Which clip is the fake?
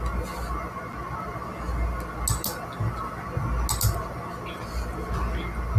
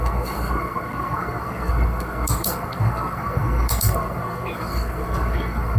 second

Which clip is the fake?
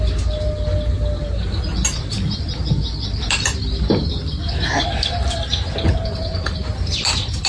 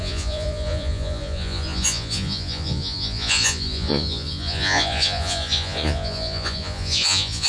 second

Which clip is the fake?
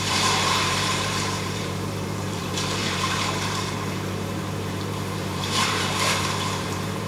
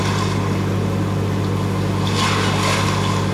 first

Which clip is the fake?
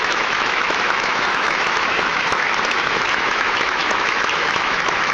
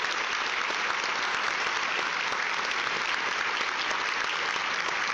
first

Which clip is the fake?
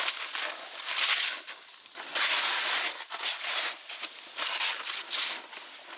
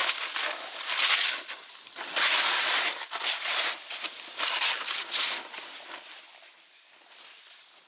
second